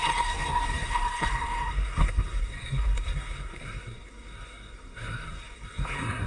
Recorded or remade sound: remade